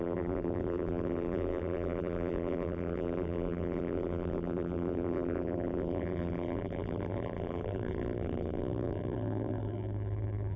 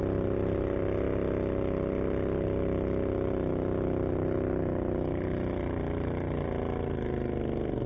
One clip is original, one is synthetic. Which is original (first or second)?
second